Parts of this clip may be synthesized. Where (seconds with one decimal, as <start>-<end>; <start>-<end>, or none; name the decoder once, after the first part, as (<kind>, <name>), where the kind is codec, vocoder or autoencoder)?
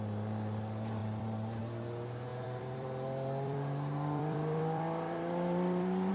1.0-1.6 (vocoder, BigVGAN v2); 2.3-6.1